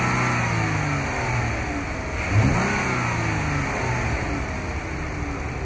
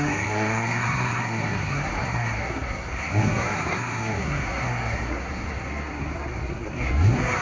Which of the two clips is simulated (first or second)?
second